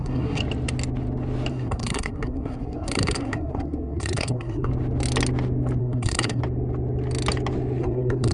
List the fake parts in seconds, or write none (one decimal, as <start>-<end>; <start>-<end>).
0.0-0.4; 1.5-4.7; 5.8-6.4; 7.8-8.3